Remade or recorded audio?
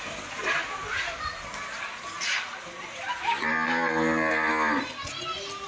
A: recorded